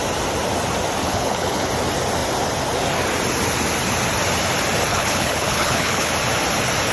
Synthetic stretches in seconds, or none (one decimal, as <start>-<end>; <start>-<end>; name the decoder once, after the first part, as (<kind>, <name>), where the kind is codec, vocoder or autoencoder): 1.0-1.7 (codec, HILCodec); 4.9-6.1